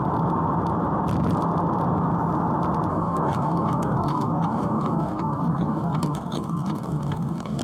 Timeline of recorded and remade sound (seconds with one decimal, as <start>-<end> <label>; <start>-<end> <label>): 0.0-2.9 recorded; 2.9-7.6 remade